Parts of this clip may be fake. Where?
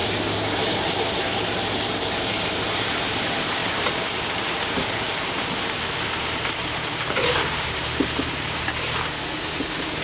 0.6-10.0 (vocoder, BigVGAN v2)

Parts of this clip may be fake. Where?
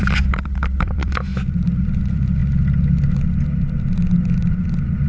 0.0-1.3 (vocoder, BigVGAN v2); 2.0-2.4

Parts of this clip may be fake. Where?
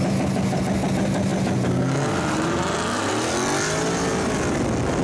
none